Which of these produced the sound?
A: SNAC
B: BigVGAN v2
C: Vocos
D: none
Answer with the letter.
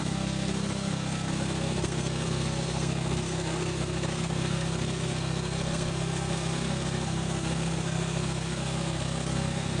A